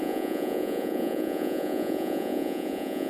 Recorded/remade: remade